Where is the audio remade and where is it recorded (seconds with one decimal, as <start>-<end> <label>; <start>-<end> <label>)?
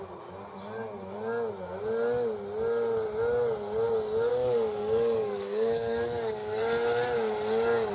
0.0-4.3 recorded; 4.3-6.6 remade; 6.6-7.9 recorded